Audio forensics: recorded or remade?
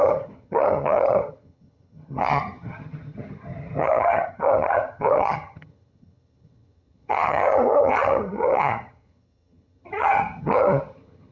remade